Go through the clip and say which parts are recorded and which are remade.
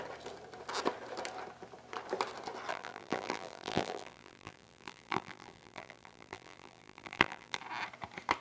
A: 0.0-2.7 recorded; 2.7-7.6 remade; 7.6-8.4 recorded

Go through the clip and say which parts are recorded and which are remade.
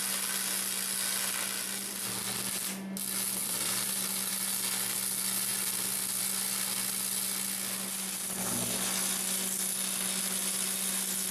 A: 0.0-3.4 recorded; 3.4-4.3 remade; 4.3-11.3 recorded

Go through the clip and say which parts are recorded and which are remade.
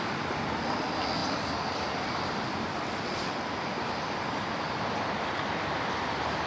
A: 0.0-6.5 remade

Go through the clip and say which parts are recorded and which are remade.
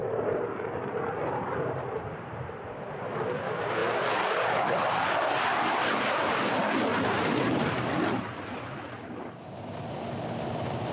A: 0.0-2.8 remade; 2.8-6.9 recorded; 6.9-9.9 remade; 9.9-10.9 recorded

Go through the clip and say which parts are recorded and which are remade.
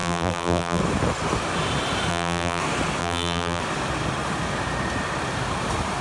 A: 0.0-0.8 remade; 0.8-2.1 recorded; 2.1-2.6 remade; 2.6-3.0 recorded; 3.0-3.6 remade; 3.6-6.0 recorded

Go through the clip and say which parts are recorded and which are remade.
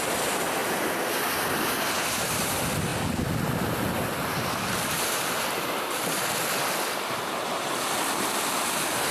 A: 0.0-9.1 recorded